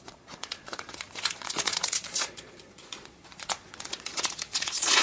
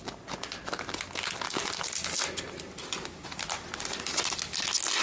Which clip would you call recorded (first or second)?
second